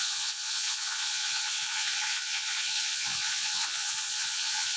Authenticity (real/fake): fake